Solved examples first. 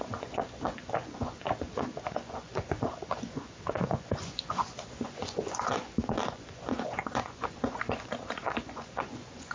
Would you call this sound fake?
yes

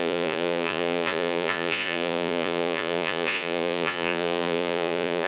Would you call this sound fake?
yes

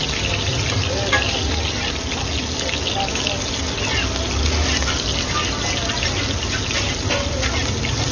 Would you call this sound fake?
no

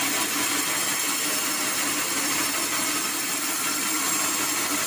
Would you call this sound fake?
no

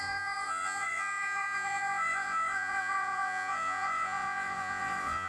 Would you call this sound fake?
yes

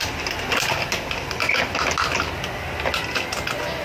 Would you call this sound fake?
no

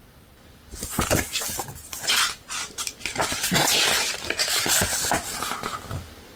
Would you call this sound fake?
no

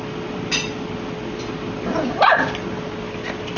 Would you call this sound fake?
no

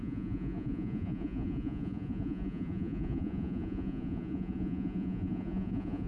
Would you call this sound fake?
yes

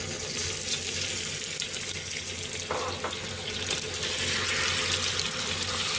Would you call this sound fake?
no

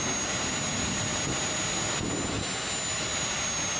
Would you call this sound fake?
no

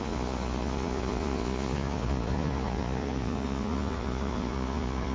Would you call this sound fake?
yes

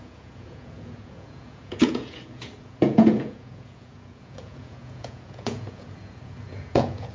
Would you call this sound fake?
yes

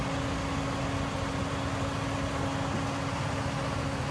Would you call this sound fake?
no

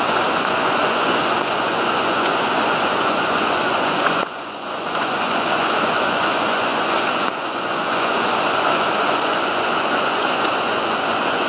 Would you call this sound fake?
yes